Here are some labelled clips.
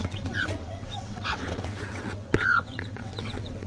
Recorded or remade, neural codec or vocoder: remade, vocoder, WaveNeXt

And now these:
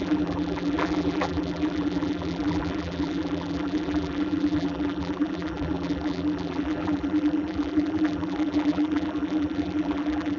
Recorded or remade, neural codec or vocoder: remade, vocoder, BigVGAN v2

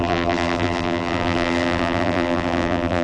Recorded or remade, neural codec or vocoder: remade, vocoder, BigVGAN v2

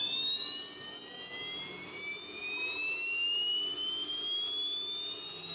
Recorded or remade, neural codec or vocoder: recorded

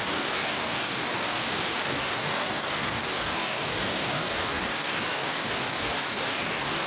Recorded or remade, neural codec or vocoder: remade, codec, DAC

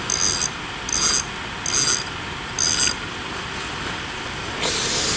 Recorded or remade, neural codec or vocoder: recorded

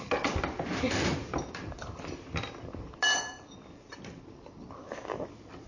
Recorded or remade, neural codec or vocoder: recorded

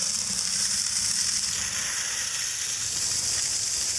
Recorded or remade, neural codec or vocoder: recorded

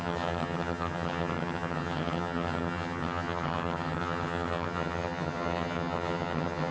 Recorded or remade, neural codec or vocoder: remade, vocoder, HiFi-GAN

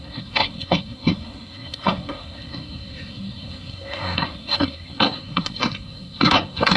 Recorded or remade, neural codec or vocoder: remade, codec, SNAC